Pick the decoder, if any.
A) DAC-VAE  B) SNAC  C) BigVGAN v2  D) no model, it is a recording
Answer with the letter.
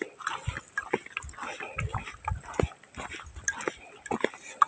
D